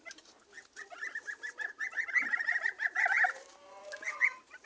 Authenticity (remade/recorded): recorded